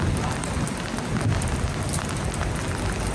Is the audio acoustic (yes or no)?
yes